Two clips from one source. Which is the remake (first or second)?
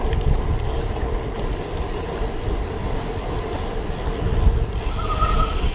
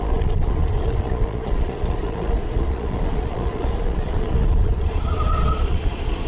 second